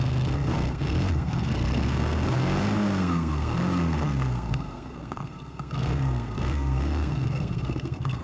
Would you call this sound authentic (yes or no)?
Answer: no